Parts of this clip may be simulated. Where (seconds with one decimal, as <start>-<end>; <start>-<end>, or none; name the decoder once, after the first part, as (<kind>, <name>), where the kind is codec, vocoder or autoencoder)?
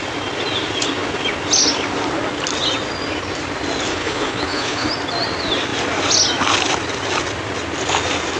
3.9-4.9 (codec, HILCodec)